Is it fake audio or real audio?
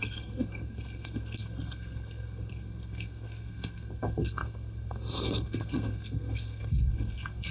fake